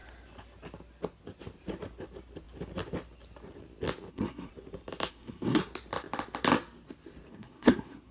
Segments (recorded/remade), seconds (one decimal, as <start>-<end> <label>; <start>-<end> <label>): 0.0-4.1 recorded; 4.1-4.5 remade; 4.5-5.1 recorded; 5.1-5.6 remade; 5.6-7.3 recorded; 7.3-8.1 remade